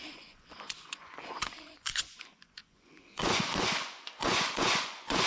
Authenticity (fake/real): fake